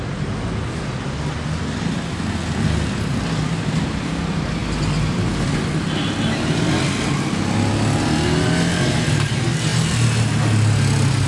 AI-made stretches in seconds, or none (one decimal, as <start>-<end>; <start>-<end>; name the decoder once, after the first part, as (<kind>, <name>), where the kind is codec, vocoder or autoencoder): none